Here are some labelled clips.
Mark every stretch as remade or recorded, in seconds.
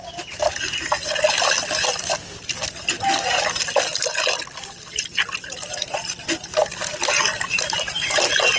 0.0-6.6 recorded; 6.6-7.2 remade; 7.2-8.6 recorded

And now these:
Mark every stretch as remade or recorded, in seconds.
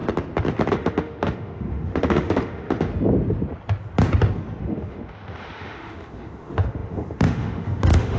0.0-0.7 recorded; 0.7-2.9 remade; 2.9-4.6 recorded; 4.6-8.2 remade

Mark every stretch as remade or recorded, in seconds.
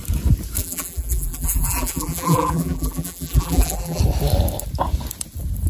0.0-0.6 recorded; 0.6-4.0 remade; 4.0-5.7 recorded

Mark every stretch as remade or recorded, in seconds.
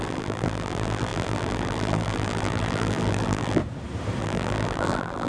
0.0-3.6 remade; 3.6-4.2 recorded; 4.2-5.3 remade